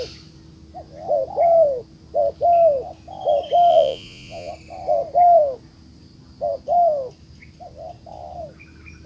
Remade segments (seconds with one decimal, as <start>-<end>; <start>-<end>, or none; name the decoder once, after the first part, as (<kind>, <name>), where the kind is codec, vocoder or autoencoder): 3.7-4.5 (vocoder, Vocos)